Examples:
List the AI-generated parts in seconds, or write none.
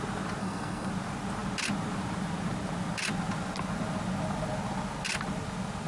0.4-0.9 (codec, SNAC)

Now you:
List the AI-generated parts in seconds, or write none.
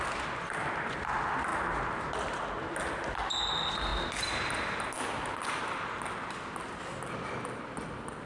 none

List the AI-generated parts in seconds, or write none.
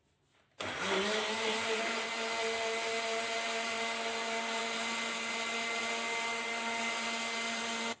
none